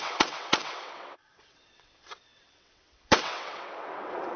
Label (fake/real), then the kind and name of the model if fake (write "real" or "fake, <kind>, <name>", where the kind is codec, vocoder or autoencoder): fake, vocoder, WaveNeXt